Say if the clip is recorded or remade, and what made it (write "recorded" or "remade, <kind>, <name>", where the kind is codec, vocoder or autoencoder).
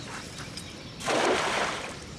remade, vocoder, BigVGAN v2